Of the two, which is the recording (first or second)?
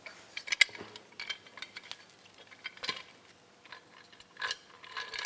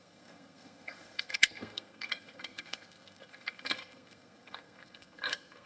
first